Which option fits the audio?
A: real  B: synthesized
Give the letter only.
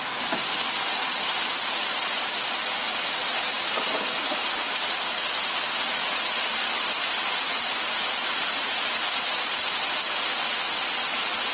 A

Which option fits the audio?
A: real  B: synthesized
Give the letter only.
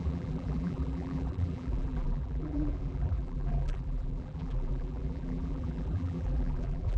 B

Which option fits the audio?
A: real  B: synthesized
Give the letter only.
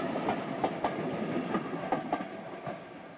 A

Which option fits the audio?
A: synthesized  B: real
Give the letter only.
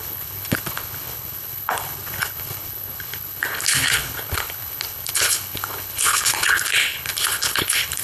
A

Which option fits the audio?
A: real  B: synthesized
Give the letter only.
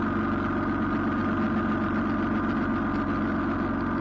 A